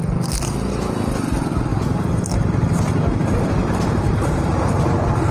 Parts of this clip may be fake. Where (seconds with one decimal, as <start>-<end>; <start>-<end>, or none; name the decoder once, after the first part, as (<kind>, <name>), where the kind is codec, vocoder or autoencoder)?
1.7-5.3 (vocoder, BigVGAN v2)